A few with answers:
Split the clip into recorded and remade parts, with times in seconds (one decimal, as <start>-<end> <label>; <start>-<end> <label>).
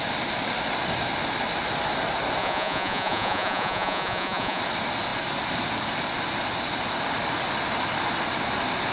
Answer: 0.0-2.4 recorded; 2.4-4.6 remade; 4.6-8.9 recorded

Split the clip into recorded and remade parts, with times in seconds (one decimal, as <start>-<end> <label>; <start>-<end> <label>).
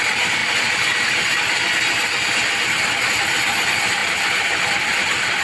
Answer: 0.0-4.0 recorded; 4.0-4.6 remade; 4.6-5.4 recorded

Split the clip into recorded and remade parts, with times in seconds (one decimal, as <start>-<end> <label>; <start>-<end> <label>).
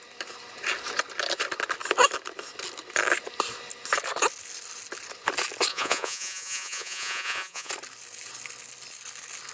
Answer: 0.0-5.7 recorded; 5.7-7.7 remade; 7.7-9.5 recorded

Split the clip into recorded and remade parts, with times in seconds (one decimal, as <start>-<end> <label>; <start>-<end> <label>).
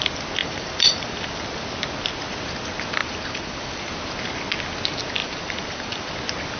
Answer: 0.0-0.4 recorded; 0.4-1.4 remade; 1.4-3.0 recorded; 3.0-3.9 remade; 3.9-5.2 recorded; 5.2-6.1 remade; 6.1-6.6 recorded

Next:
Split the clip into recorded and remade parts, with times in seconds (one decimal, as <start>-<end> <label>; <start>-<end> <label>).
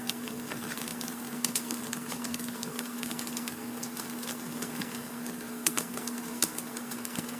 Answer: 0.0-7.4 remade